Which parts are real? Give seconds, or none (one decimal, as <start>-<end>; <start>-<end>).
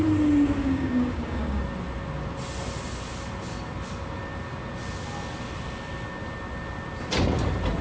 0.0-0.6; 1.6-7.8